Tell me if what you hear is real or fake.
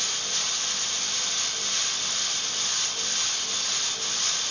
real